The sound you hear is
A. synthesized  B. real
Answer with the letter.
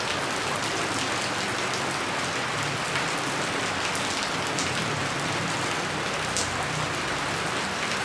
B